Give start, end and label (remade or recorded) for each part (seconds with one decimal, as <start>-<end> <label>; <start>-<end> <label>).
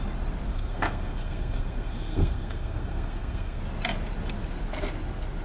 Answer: 0.0-0.5 recorded; 0.5-3.6 remade; 3.6-5.4 recorded